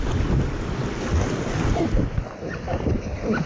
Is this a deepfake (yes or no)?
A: no